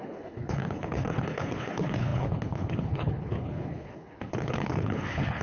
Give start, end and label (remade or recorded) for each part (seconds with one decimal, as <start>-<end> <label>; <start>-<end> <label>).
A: 0.0-5.4 remade

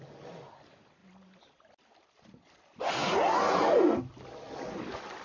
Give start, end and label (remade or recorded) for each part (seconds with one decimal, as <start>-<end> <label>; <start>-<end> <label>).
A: 0.0-5.2 recorded

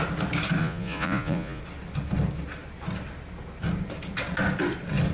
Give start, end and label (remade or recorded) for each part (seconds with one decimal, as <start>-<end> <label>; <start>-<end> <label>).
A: 0.0-0.6 recorded; 0.6-1.6 remade; 1.6-5.1 recorded

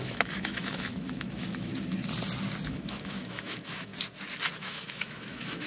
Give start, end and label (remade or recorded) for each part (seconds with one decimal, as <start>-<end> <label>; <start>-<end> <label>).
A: 0.0-1.7 remade; 1.7-2.7 recorded; 2.7-3.9 remade; 3.9-4.6 recorded; 4.6-5.7 remade